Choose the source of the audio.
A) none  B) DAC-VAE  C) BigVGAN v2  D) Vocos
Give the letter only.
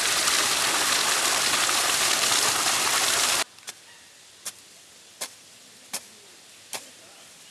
A